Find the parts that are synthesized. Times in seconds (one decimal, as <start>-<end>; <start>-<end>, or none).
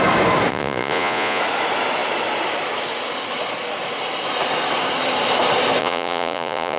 0.5-1.4; 5.8-6.8